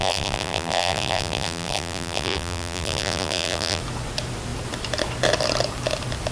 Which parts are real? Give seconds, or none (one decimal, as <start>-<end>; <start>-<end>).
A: 3.8-6.3